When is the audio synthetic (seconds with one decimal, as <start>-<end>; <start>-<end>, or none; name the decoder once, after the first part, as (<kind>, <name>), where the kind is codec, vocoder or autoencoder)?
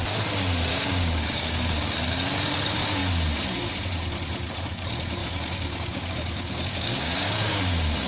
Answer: 0.7-1.7 (codec, DAC); 5.2-7.6